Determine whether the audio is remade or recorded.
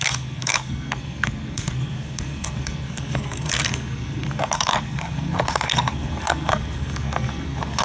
remade